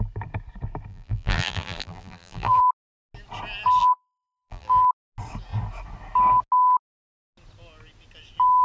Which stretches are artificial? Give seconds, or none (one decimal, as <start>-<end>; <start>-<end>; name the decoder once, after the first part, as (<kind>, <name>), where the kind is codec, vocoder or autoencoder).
0.9-2.6 (vocoder, BigVGAN v2); 3.8-4.8